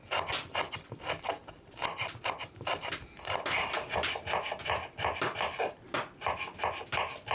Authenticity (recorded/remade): recorded